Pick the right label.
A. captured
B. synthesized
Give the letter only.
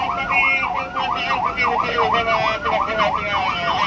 A